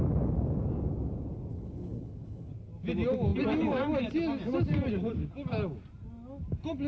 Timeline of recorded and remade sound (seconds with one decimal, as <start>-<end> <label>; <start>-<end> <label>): 0.0-1.5 recorded; 1.5-2.5 remade; 2.5-6.9 recorded